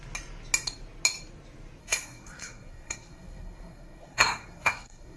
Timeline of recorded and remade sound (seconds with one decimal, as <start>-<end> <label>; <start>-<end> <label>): 0.0-1.8 recorded; 1.8-5.2 remade